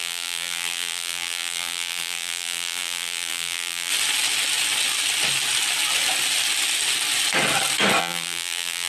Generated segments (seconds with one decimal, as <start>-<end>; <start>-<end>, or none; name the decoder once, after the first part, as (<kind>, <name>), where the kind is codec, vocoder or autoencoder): 0.0-3.9 (vocoder, BigVGAN v2); 8.0-8.9